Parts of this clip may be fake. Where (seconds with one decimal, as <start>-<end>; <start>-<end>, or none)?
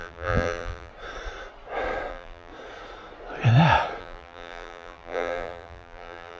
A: 0.0-0.9; 2.1-2.5; 4.0-6.4